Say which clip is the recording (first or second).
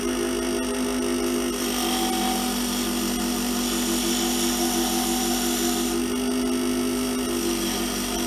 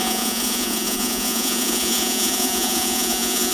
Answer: first